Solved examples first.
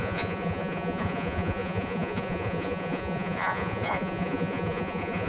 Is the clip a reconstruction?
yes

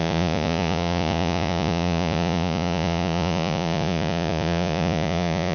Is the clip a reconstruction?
yes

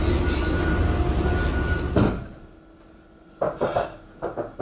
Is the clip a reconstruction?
no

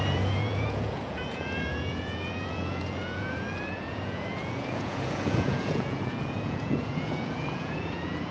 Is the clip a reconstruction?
yes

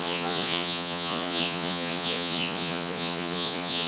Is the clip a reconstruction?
yes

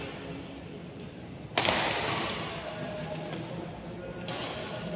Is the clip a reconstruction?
no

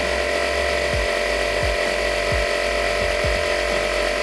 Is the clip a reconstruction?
no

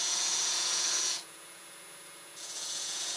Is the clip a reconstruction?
yes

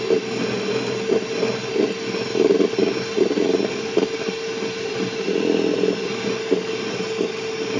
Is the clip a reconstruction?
no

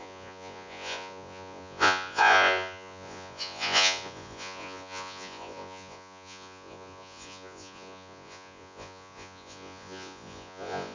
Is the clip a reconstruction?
yes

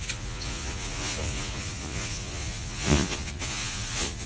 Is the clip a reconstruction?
yes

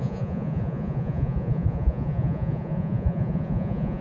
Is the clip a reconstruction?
yes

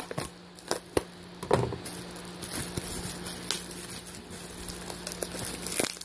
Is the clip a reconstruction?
no